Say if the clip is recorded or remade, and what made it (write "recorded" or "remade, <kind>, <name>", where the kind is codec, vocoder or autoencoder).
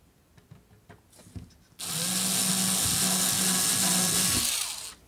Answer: recorded